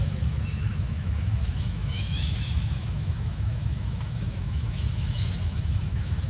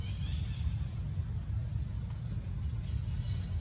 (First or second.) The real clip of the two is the second